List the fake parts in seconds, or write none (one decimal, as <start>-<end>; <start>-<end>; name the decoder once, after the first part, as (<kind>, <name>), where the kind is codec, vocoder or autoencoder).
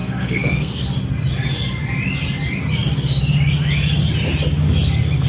0.0-0.8 (codec, SNAC)